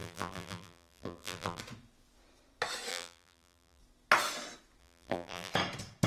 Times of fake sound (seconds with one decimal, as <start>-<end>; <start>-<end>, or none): 0.0-1.6; 2.9-3.8; 4.8-5.5